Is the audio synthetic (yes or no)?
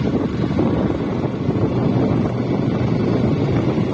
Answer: no